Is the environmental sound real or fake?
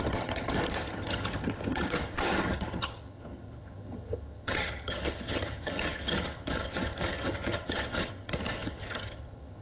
fake